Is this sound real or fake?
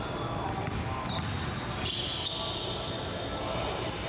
real